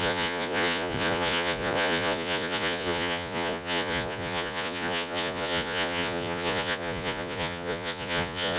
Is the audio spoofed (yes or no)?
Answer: yes